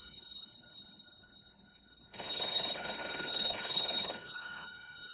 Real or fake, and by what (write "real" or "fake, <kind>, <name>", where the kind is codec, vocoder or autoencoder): fake, codec, HILCodec